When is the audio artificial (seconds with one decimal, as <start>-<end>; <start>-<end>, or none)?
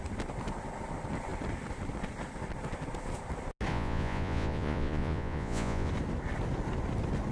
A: 3.7-5.9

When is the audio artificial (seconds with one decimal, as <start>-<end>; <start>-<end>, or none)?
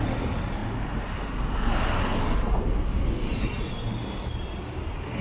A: none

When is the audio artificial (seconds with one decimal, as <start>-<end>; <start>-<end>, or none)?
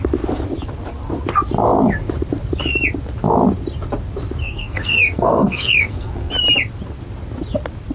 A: 4.4-6.3